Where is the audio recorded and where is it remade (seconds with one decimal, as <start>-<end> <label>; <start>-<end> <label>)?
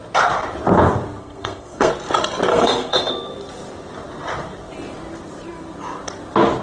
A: 0.0-1.2 recorded; 1.2-1.9 remade; 1.9-2.5 recorded; 2.5-3.1 remade; 3.1-6.6 recorded